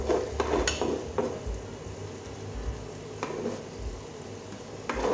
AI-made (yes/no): no